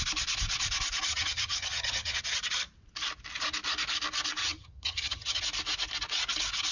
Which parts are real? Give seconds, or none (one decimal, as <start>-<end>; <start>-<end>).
0.0-1.1; 2.2-4.4; 5.4-6.7